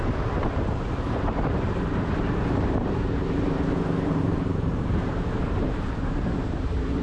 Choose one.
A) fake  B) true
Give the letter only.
A